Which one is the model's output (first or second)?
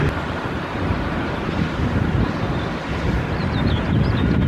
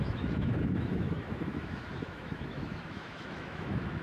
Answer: second